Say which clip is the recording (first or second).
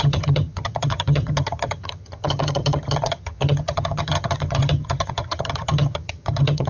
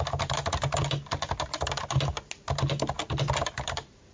second